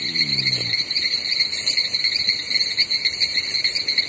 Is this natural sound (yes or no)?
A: yes